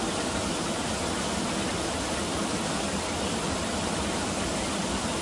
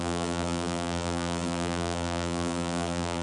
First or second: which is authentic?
first